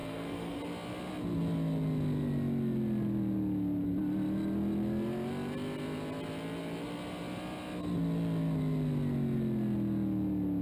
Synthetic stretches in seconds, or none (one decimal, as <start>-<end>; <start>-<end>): 0.0-0.6